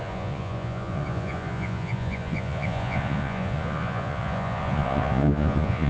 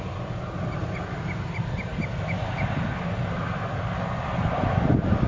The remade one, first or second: first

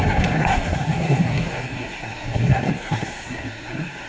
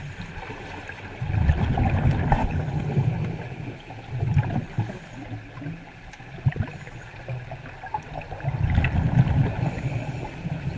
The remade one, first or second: first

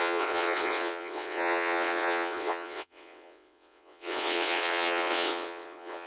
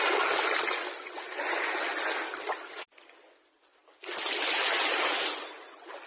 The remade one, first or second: first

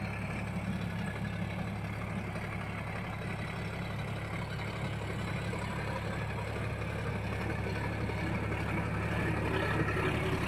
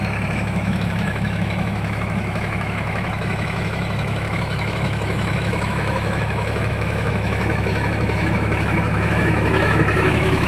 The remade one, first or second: second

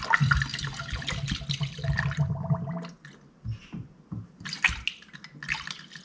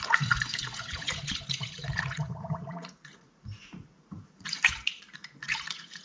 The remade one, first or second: second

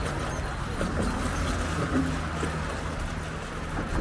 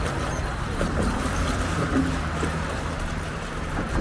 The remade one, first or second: second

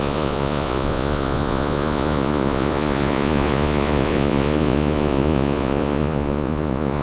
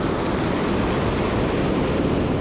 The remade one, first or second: first